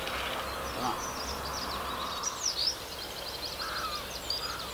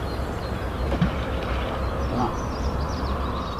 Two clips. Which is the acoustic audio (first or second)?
first